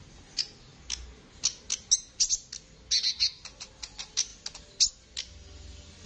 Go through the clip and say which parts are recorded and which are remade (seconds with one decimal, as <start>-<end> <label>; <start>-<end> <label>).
0.0-6.1 recorded